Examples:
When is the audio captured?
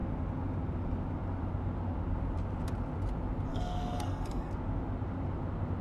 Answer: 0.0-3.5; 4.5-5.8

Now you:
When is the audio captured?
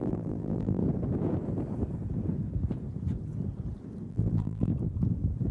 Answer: 0.8-4.1; 4.7-5.5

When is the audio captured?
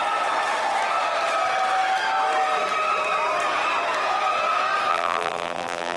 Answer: 0.0-4.9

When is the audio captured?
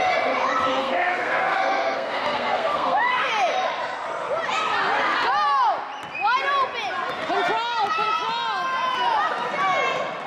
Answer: 0.0-0.7; 3.3-10.3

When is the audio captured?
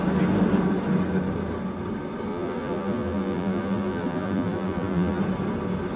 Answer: 0.0-2.3; 5.2-6.0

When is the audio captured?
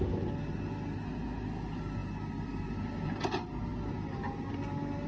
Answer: 0.0-5.1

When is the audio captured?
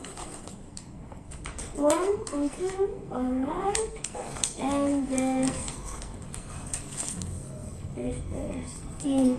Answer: none